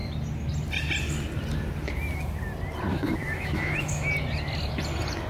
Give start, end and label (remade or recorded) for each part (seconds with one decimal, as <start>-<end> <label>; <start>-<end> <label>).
0.0-2.9 recorded; 2.9-4.1 remade; 4.1-5.3 recorded